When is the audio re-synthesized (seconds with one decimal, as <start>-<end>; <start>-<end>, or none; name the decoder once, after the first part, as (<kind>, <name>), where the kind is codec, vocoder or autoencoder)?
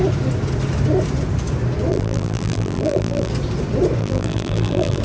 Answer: 1.9-3.3 (vocoder, BigVGAN v2); 4.0-5.0